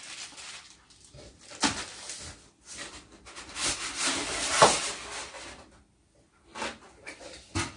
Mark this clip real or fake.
real